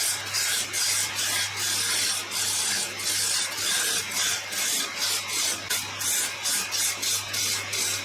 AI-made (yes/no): no